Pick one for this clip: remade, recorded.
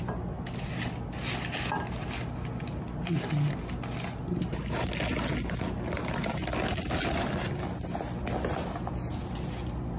recorded